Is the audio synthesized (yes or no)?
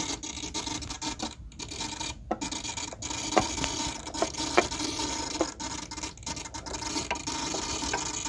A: no